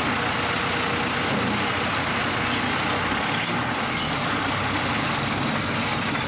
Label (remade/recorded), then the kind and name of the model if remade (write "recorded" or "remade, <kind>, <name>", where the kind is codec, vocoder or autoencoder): recorded